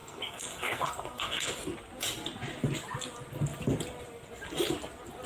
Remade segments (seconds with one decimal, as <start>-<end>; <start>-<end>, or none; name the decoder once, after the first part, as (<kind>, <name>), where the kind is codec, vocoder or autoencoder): 0.0-1.5 (codec, SNAC)